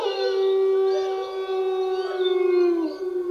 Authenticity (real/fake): real